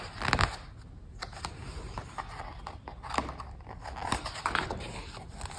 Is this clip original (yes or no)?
yes